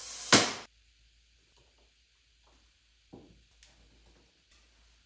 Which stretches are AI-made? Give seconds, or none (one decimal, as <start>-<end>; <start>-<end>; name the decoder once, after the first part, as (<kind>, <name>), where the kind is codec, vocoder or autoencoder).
none